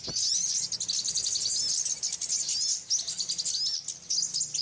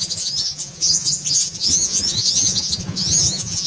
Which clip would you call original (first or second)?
first